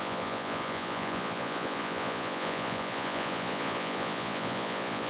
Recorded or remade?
remade